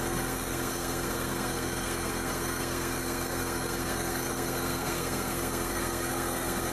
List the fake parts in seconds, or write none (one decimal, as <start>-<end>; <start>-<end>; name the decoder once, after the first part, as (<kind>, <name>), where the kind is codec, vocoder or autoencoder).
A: 0.0-6.7 (codec, SNAC)